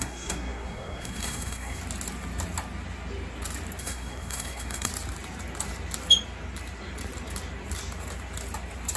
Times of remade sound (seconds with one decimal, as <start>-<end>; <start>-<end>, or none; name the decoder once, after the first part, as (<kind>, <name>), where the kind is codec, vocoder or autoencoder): 0.0-1.8 (codec, SNAC); 3.8-4.9